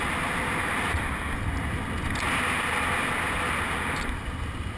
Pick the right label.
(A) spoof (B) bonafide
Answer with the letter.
B